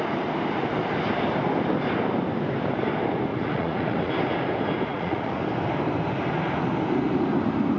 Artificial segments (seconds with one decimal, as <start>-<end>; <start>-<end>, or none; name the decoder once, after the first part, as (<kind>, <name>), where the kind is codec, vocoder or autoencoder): 3.3-4.1 (vocoder, Vocos); 4.9-5.4